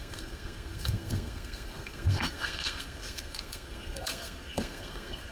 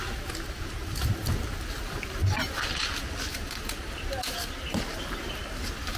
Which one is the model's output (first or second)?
first